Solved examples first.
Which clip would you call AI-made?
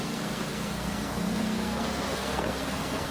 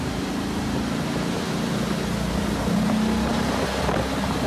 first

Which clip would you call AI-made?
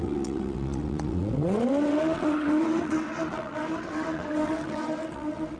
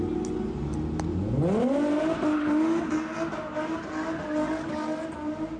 first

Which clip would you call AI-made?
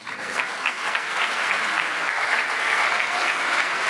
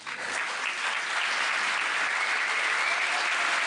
first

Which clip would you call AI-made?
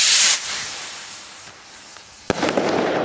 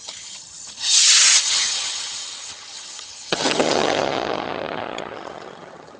second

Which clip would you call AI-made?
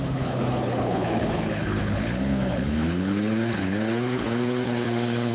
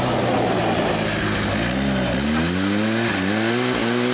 first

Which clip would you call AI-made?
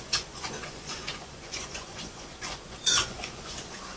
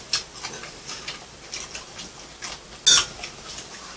first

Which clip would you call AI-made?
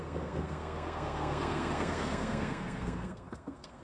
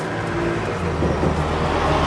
first